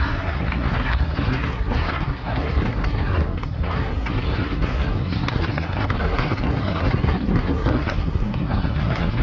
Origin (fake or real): fake